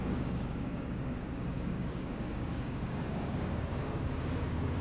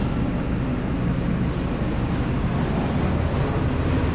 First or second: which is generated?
first